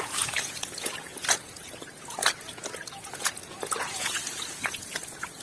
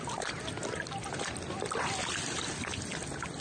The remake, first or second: first